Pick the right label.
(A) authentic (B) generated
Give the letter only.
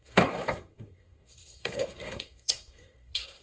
B